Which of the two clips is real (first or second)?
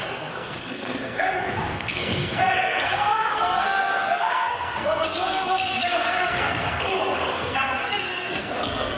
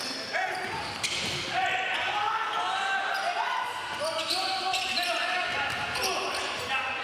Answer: second